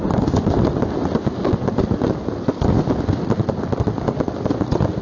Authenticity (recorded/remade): recorded